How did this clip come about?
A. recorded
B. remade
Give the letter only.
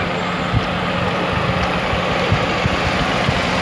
A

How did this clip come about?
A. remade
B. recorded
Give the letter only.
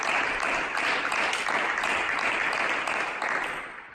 B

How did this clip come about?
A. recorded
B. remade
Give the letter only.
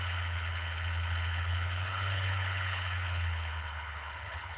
B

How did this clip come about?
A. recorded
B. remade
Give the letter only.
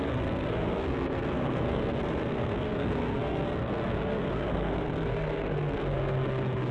B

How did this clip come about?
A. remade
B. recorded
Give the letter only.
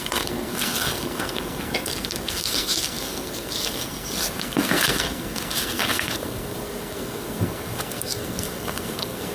A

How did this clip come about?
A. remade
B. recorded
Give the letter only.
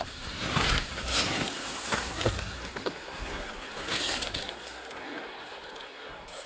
A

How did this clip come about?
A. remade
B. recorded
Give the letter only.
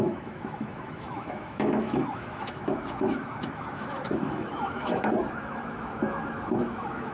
A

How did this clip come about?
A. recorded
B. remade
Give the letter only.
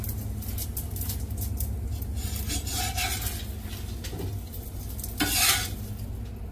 A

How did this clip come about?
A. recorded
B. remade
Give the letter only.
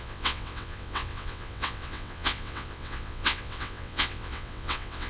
B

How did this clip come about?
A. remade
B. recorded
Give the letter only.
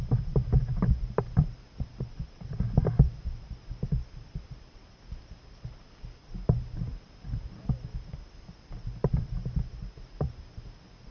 B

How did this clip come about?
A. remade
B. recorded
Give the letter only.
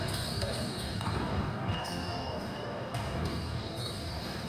A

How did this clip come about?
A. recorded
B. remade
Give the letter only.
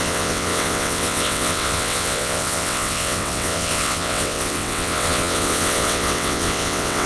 B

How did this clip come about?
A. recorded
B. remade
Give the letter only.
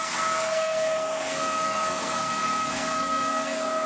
B